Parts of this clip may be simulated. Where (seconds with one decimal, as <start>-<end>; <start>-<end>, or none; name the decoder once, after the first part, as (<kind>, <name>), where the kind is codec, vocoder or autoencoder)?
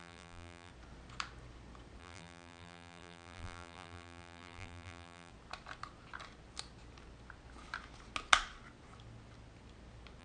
0.0-0.7 (vocoder, BigVGAN v2); 2.0-5.3